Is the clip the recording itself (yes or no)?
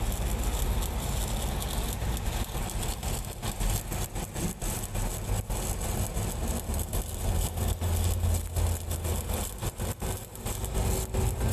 yes